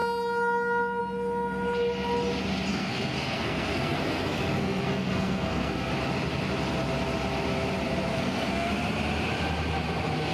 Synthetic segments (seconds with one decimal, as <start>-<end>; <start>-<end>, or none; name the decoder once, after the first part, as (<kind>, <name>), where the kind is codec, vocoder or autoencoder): 2.7-5.9 (codec, SNAC); 8.1-8.7